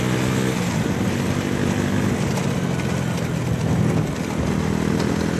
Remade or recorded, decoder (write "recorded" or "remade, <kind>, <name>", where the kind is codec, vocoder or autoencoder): recorded